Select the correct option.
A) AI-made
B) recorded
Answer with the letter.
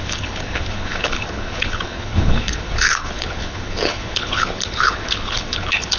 A